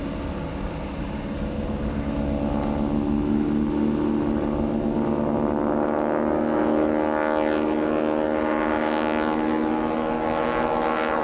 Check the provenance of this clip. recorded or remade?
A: recorded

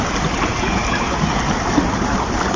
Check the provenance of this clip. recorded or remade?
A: recorded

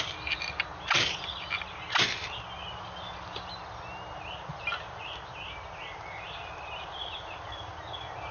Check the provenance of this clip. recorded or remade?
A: recorded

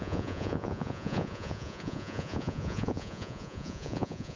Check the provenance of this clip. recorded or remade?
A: remade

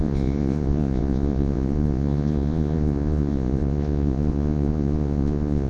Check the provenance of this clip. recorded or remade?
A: remade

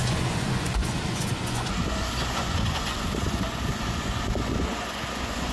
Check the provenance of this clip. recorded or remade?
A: remade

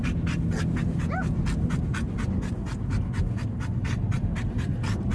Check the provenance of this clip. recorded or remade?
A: recorded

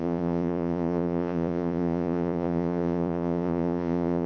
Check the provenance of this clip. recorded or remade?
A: remade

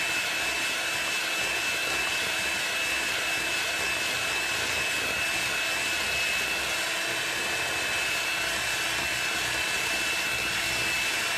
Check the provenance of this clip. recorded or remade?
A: recorded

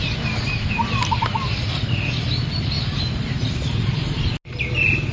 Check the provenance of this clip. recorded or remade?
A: recorded